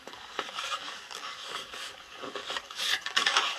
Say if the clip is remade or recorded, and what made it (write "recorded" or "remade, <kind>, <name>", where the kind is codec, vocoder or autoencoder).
remade, codec, DAC